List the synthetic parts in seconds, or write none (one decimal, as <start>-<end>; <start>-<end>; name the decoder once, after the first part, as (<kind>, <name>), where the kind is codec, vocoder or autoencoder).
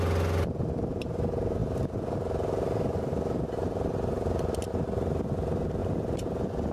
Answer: 1.6-4.7 (vocoder, BigVGAN v2); 5.8-6.7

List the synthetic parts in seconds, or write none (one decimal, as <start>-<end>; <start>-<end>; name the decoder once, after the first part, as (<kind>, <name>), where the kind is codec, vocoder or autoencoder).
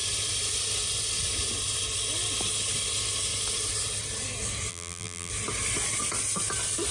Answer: 4.7-5.3 (vocoder, BigVGAN v2)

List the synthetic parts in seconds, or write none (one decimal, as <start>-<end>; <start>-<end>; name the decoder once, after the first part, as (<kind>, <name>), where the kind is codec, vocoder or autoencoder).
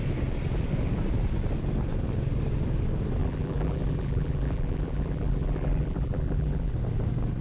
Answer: 3.2-6.7 (vocoder, BigVGAN v2)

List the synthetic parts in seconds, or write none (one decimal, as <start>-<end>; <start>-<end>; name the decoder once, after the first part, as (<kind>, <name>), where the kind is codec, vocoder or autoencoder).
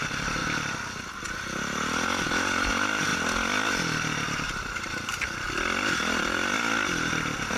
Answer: 0.0-0.4 (vocoder, BigVGAN v2); 2.7-3.1; 4.6-7.6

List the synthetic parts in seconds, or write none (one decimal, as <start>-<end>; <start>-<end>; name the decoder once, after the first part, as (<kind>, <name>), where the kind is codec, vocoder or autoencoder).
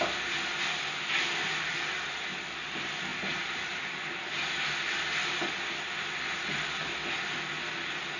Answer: 3.1-3.8 (vocoder, BigVGAN v2)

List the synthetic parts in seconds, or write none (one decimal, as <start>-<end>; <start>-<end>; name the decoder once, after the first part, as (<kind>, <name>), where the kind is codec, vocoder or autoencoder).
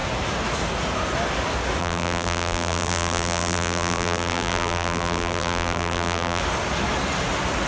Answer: 1.8-6.4 (vocoder, BigVGAN v2)